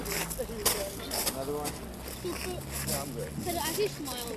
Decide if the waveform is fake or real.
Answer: real